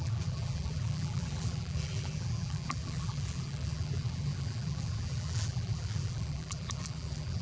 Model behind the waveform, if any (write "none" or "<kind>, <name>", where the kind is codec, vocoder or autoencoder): vocoder, BigVGAN v2